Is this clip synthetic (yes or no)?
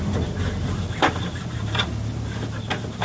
no